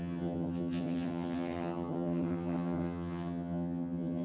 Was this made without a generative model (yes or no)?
no